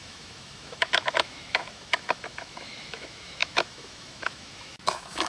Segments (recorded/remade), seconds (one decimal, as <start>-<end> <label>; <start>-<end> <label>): 0.0-5.3 remade